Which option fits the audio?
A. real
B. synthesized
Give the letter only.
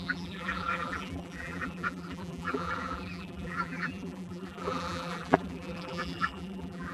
B